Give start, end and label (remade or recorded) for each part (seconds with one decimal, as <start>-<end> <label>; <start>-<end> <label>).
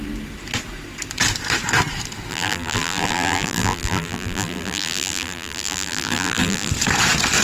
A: 0.0-2.3 recorded; 2.3-6.7 remade; 6.7-7.4 recorded